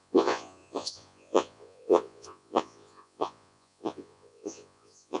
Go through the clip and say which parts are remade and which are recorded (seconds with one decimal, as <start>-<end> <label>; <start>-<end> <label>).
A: 0.0-5.2 remade